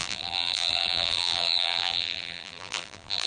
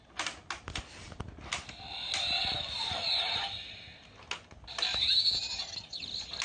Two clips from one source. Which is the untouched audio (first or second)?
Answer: second